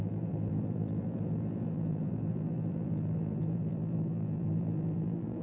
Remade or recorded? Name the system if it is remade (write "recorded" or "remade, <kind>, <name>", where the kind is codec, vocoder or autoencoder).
remade, vocoder, BigVGAN v2